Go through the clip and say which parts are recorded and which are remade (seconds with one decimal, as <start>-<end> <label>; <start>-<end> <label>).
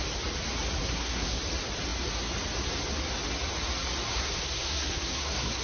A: 0.0-0.8 recorded; 0.8-1.4 remade; 1.4-4.1 recorded; 4.1-5.6 remade